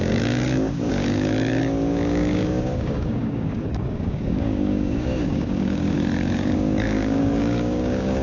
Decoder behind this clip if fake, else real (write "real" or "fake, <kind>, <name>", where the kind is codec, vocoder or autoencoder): fake, codec, DAC